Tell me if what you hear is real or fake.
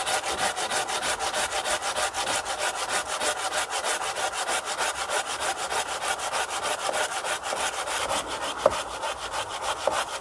real